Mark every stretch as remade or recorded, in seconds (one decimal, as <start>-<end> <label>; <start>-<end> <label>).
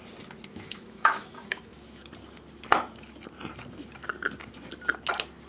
0.0-0.5 recorded; 0.5-2.1 remade; 2.1-5.5 recorded